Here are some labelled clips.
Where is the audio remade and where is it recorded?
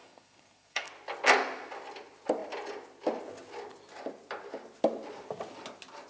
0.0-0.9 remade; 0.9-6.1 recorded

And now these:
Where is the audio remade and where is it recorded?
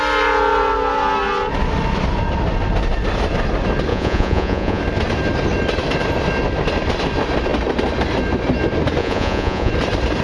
0.0-3.9 recorded; 3.9-4.8 remade; 4.8-9.0 recorded; 9.0-9.7 remade; 9.7-10.2 recorded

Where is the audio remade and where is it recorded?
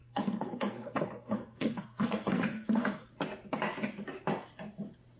0.0-3.1 remade; 3.1-5.2 recorded